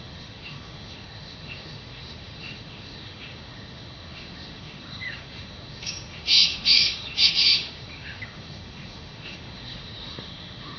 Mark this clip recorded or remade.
remade